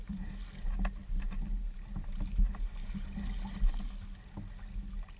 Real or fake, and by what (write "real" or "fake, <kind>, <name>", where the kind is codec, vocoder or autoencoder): real